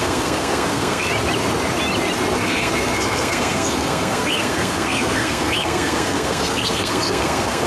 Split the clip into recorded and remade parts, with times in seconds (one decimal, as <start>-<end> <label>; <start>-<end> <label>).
0.0-1.1 remade; 1.1-2.4 recorded; 2.4-7.7 remade